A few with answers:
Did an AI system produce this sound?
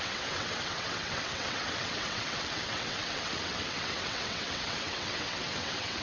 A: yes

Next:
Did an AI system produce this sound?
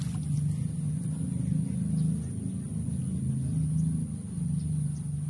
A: no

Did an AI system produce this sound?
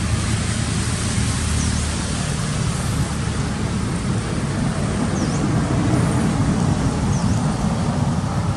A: no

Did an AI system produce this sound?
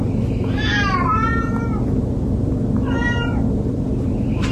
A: no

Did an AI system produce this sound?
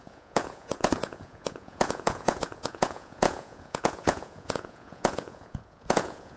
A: yes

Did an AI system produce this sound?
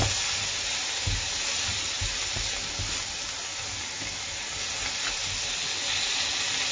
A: no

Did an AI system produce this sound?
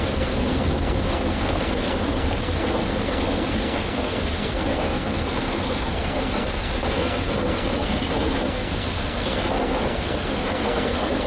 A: yes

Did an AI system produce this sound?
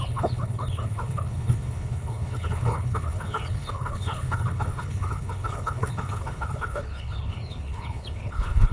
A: yes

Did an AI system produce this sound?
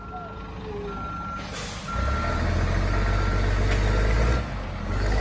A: no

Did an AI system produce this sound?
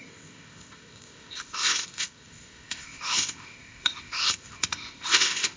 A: yes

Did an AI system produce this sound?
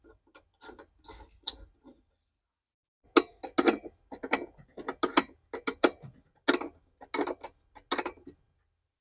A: no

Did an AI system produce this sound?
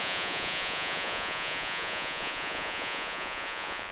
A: yes